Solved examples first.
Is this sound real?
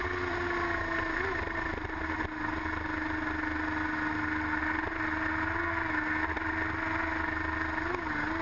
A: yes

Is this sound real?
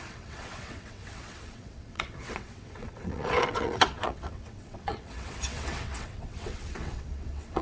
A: no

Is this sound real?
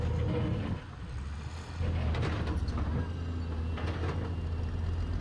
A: yes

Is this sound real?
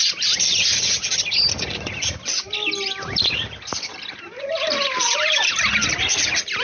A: yes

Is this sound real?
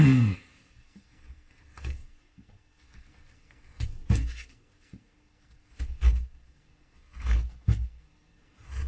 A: no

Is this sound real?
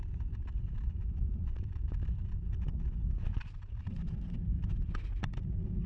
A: yes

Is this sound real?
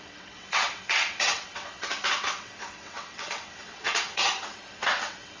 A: no